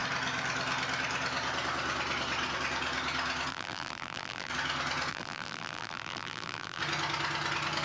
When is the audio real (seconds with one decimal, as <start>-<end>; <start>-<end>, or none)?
0.0-3.5; 4.5-5.1; 6.8-7.8